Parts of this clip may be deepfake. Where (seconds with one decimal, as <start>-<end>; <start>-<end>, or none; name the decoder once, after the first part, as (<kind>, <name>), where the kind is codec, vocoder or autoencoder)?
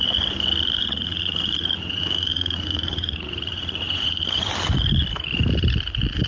0.8-4.5 (vocoder, Vocos)